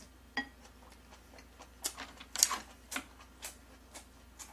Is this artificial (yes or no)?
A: no